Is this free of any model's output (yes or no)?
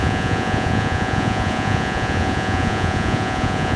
no